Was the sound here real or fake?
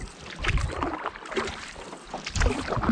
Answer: real